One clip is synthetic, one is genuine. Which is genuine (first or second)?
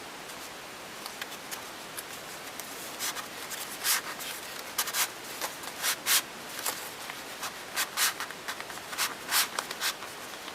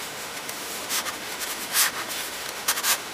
first